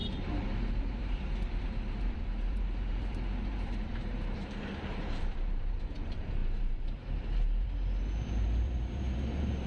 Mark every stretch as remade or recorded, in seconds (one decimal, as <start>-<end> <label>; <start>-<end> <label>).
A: 0.0-9.7 remade